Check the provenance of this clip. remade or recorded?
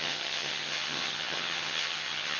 remade